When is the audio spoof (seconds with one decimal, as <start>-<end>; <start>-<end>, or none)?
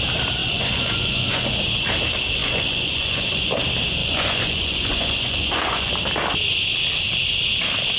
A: 0.4-1.5; 2.4-3.5; 4.0-5.9